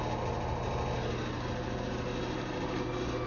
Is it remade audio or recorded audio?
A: recorded